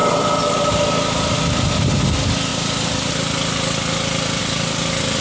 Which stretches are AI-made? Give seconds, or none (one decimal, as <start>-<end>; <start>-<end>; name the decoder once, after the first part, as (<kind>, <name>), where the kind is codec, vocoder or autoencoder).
none